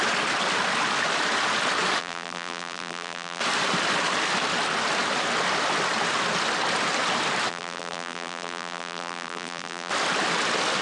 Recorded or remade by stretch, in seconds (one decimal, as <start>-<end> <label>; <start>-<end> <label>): 0.0-2.0 recorded; 2.0-3.4 remade; 3.4-7.5 recorded; 7.5-9.9 remade; 9.9-10.8 recorded